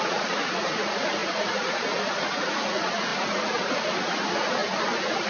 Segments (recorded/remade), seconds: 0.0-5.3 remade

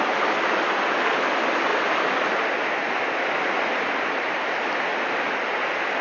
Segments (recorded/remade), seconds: 0.0-6.0 recorded

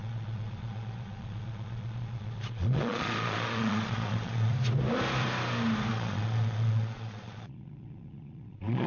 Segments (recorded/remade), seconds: 0.0-4.5 remade; 4.5-5.9 recorded; 5.9-8.9 remade

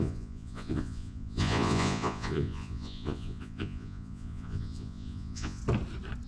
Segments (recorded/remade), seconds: 0.0-5.6 remade; 5.6-6.3 recorded

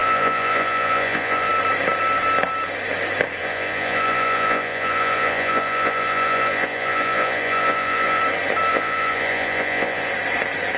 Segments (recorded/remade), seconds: 0.0-1.5 remade; 1.5-3.4 recorded; 3.4-8.2 remade; 8.2-8.7 recorded; 8.7-10.1 remade; 10.1-10.8 recorded